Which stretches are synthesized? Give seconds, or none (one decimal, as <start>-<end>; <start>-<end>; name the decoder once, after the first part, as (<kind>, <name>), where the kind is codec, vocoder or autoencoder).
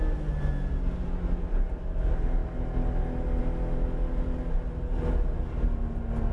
none